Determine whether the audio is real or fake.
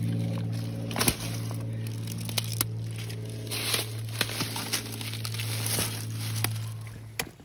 real